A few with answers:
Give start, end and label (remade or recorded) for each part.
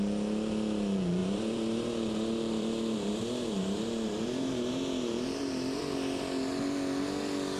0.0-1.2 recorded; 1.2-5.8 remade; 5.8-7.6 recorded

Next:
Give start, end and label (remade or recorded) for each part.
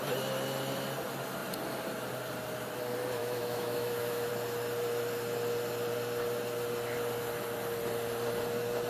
0.0-3.2 recorded; 3.2-4.3 remade; 4.3-8.9 recorded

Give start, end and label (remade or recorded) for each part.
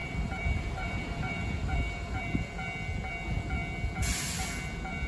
0.0-2.5 remade; 2.5-5.1 recorded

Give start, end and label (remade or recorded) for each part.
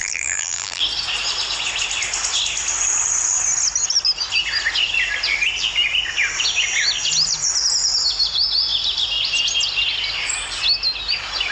0.0-0.8 remade; 0.8-11.5 recorded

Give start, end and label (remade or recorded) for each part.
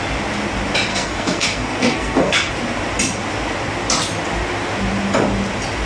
0.0-0.9 recorded; 0.9-2.5 remade; 2.5-5.9 recorded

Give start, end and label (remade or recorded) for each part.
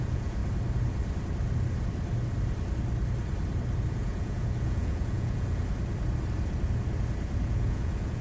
0.0-0.4 remade; 0.4-3.9 recorded; 3.9-5.6 remade; 5.6-7.4 recorded; 7.4-8.2 remade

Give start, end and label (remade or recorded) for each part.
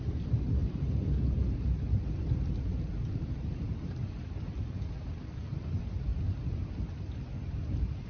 0.0-6.1 remade; 6.1-7.5 recorded; 7.5-8.1 remade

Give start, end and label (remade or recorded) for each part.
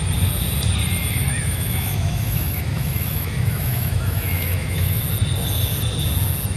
0.0-1.2 recorded; 1.2-5.0 remade; 5.0-6.6 recorded